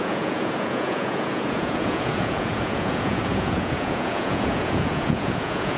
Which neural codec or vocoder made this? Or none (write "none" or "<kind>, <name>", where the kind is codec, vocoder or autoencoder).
vocoder, Vocos